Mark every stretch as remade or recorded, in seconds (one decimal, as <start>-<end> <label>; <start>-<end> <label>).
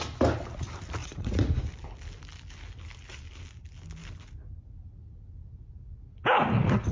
0.0-1.0 recorded; 1.0-1.6 remade; 1.6-6.9 recorded